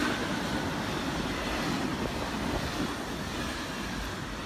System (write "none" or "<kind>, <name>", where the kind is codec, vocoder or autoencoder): none